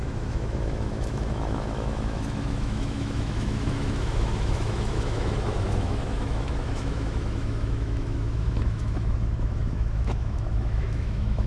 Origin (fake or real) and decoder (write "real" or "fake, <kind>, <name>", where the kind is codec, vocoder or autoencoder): fake, autoencoder, DAC-VAE